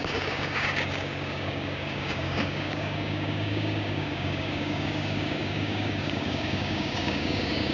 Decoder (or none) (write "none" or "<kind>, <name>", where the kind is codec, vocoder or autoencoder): codec, DAC